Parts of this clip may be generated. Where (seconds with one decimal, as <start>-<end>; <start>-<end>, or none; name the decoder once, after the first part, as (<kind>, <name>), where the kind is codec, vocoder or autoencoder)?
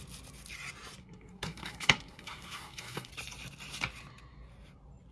1.0-3.1 (codec, SNAC)